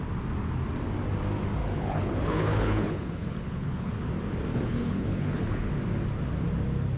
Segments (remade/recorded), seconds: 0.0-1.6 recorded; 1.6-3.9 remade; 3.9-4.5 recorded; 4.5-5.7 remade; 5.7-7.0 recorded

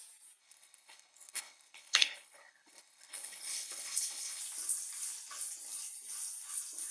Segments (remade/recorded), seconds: 0.0-0.4 recorded; 0.4-4.4 remade; 4.4-6.9 recorded

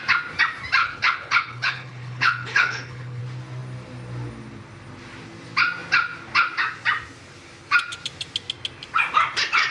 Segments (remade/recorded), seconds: 0.0-0.8 recorded; 0.8-3.2 remade; 3.2-9.7 recorded

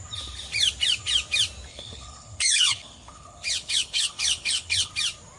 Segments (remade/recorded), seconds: 0.0-1.7 recorded; 1.7-4.9 remade; 4.9-5.4 recorded

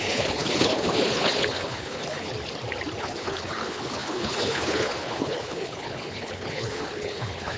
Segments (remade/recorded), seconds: 0.0-2.3 remade; 2.3-3.0 recorded; 3.0-7.6 remade